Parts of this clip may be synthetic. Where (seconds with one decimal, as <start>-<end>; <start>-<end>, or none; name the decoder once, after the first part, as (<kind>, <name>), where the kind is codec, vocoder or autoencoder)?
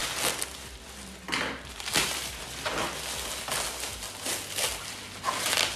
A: none